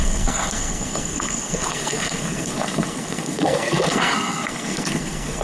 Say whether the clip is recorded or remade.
remade